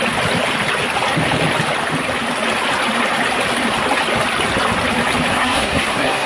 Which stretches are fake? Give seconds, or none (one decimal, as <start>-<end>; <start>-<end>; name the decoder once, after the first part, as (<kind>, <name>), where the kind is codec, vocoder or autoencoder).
5.3-6.3 (codec, SNAC)